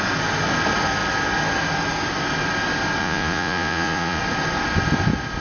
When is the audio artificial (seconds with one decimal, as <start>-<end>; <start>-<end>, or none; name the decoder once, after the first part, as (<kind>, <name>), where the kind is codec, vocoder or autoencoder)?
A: 3.0-4.2 (vocoder, Vocos)

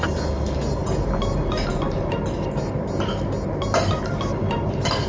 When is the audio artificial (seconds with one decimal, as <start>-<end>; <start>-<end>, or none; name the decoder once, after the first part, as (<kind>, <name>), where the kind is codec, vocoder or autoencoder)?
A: none

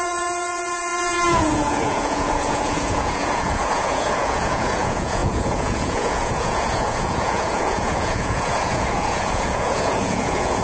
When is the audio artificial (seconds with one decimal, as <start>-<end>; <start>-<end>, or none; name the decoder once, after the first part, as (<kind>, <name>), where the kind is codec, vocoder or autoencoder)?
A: 0.0-10.6 (vocoder, Vocos)

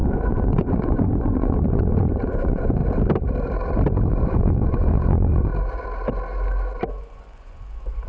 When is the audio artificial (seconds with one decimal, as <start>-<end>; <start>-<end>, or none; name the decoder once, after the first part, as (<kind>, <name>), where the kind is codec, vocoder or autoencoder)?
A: 0.0-2.8 (vocoder, Vocos); 4.1-5.5; 7.0-8.1

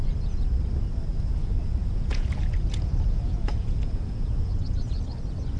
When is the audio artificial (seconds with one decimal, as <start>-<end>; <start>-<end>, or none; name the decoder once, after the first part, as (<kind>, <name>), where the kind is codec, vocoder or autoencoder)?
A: 1.1-4.5 (vocoder, Vocos)